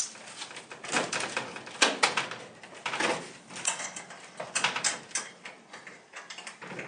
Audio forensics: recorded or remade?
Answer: recorded